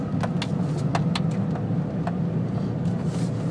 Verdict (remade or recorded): recorded